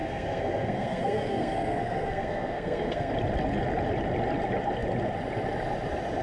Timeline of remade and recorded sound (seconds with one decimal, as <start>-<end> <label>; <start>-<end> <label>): 0.0-3.1 remade; 3.1-6.2 recorded